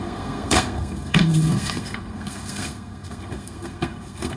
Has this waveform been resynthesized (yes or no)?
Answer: yes